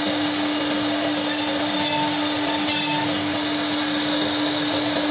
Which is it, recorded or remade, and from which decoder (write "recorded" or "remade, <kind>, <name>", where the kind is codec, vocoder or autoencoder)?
recorded